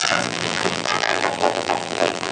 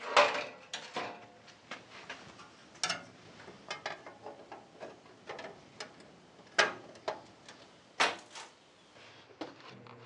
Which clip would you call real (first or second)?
second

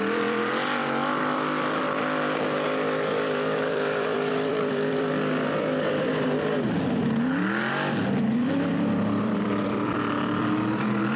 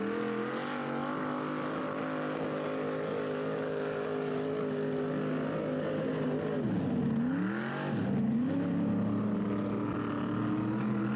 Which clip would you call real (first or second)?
second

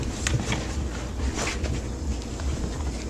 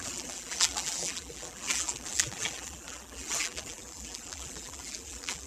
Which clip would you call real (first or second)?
first